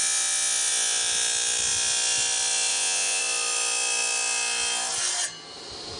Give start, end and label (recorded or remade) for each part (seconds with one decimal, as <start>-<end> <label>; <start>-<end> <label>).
0.0-2.7 recorded; 2.7-3.2 remade; 3.2-6.0 recorded